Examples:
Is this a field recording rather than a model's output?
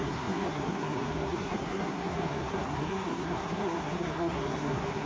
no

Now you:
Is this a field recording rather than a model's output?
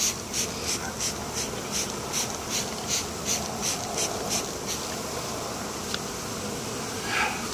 yes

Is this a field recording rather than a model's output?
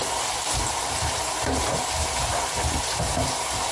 yes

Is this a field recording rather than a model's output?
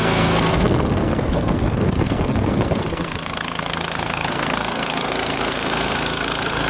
no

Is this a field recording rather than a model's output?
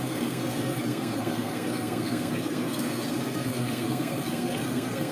no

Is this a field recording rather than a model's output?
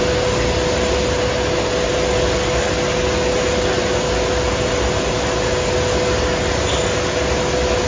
yes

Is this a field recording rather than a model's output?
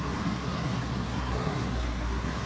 no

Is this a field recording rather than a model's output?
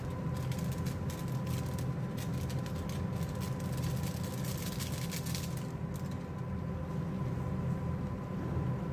yes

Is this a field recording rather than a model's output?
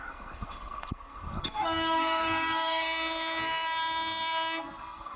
no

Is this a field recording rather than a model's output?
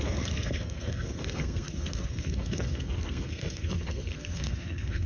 no